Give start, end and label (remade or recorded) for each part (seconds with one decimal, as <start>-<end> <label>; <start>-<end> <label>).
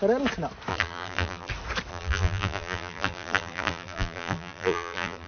0.0-0.7 recorded; 0.7-1.5 remade; 1.5-1.9 recorded; 1.9-5.3 remade